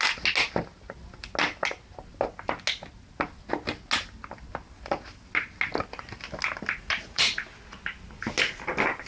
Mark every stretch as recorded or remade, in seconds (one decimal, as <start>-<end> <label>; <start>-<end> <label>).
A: 0.0-6.8 recorded; 6.8-7.4 remade; 7.4-9.1 recorded